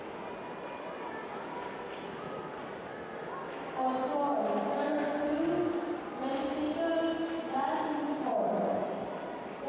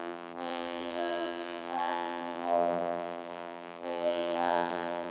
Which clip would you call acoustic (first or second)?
first